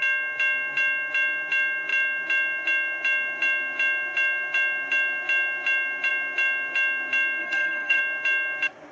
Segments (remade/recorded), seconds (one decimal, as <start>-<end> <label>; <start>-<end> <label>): 0.0-7.4 recorded; 7.4-8.0 remade; 8.0-8.9 recorded